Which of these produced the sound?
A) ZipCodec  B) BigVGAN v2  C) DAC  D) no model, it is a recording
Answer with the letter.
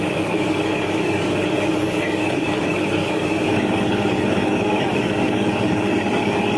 C